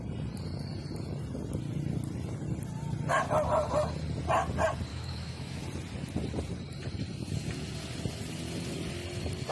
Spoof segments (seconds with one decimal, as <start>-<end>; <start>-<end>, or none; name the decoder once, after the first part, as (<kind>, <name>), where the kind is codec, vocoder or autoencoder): 4.9-5.6 (autoencoder, DAC-VAE)